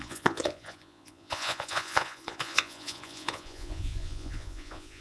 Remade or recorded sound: remade